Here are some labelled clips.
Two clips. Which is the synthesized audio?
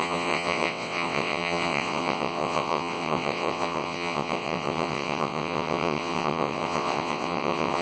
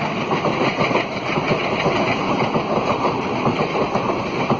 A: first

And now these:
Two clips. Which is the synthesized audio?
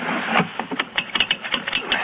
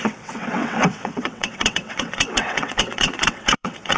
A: second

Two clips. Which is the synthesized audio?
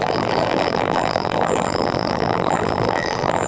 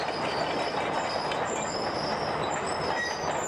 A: first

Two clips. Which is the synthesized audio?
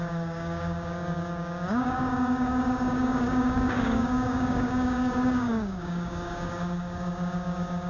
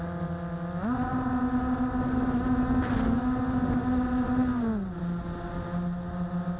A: first